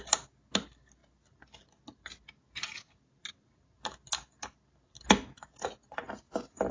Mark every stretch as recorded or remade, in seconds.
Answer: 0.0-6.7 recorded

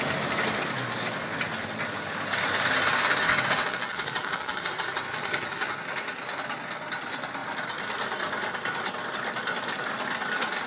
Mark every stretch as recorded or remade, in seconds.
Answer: 0.0-3.3 recorded; 3.3-4.7 remade; 4.7-5.2 recorded; 5.2-5.7 remade; 5.7-10.7 recorded

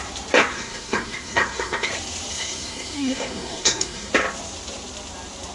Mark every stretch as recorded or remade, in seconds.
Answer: 0.0-0.5 recorded; 0.5-1.9 remade; 1.9-2.3 recorded; 2.3-4.1 remade; 4.1-5.5 recorded

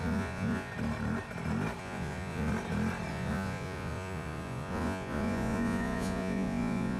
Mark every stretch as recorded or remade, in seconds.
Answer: 0.0-0.7 remade; 0.7-1.8 recorded; 1.8-2.5 remade; 2.5-3.1 recorded; 3.1-7.0 remade

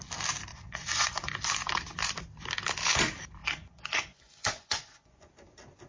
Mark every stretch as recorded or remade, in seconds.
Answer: 0.0-0.5 recorded; 0.5-1.3 remade; 1.3-3.4 recorded; 3.4-5.3 remade; 5.3-5.9 recorded

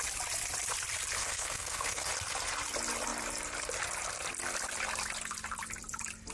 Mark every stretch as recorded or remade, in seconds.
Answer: 0.0-1.2 recorded; 1.2-2.1 remade; 2.1-6.3 recorded